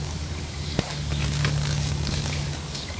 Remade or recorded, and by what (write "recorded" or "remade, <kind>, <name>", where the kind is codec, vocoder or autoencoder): remade, codec, DAC